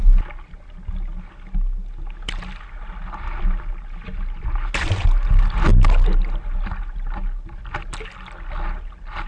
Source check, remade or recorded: recorded